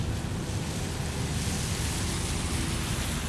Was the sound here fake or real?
real